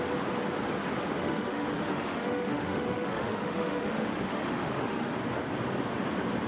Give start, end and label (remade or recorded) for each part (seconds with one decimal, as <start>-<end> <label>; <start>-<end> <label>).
0.0-1.2 recorded; 1.2-5.1 remade; 5.1-6.5 recorded